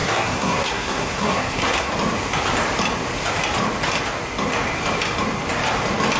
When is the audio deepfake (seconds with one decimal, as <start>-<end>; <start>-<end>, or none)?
0.0-1.9